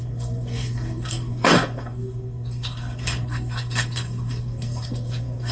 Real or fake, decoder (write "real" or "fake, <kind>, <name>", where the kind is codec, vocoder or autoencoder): fake, codec, SNAC